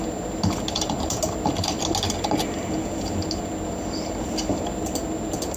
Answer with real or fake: real